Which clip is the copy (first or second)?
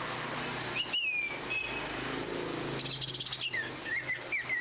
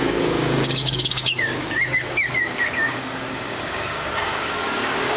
second